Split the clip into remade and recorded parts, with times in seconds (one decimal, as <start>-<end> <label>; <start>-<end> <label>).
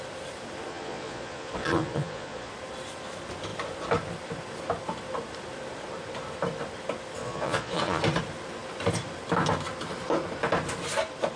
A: 0.0-0.7 recorded; 0.7-2.5 remade; 2.5-7.2 recorded; 7.2-8.0 remade; 8.0-11.4 recorded